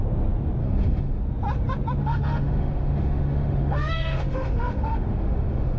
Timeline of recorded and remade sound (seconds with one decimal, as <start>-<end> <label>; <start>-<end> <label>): 0.0-0.6 recorded; 0.6-1.2 remade; 1.2-2.0 recorded; 2.0-5.8 remade